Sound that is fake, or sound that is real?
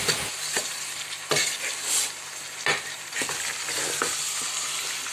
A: real